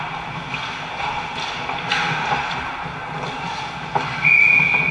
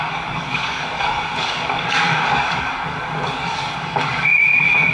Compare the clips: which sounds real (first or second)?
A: first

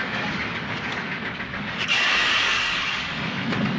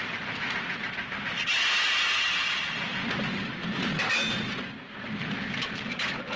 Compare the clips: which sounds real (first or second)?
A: second